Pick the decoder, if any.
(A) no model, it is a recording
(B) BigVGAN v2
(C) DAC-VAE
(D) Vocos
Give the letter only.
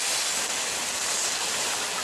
A